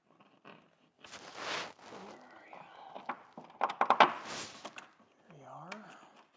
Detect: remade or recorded recorded